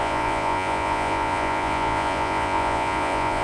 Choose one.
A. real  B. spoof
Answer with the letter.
B